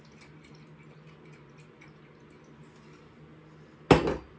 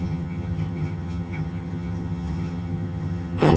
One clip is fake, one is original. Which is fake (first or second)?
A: second